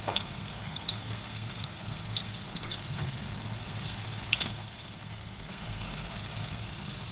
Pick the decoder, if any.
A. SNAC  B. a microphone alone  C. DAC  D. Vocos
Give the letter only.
A